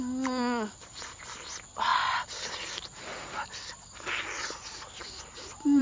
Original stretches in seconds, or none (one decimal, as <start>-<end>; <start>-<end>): 0.0-5.8